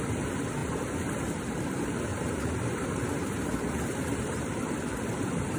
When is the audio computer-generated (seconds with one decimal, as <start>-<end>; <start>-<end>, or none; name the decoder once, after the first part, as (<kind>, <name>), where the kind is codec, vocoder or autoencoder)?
2.1-5.6 (vocoder, BigVGAN v2)